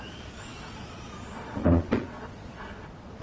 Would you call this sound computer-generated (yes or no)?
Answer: yes